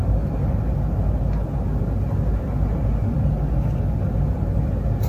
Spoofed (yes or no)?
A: no